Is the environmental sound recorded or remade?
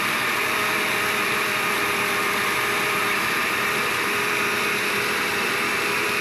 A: remade